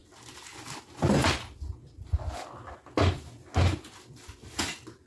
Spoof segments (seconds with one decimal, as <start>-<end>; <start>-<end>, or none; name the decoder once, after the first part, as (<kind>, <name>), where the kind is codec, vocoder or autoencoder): none